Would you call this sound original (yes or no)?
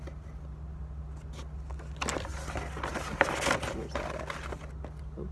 yes